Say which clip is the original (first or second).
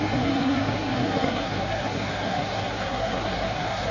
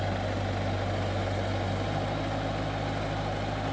second